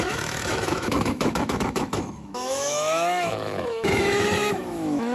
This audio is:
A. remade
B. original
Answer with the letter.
A